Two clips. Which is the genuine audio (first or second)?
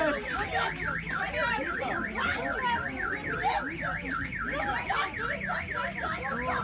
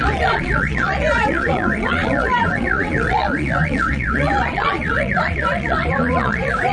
first